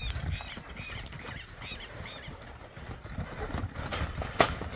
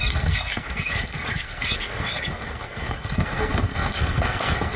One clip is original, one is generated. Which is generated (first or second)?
second